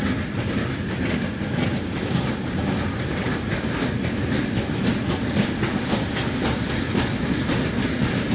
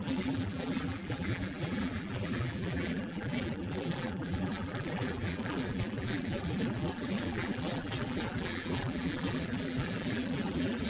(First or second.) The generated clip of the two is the second